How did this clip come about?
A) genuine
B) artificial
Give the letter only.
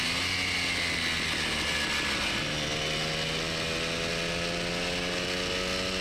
A